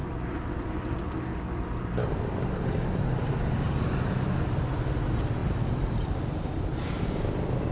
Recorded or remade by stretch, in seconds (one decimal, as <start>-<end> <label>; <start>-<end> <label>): 0.0-7.7 recorded